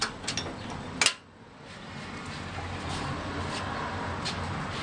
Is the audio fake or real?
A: real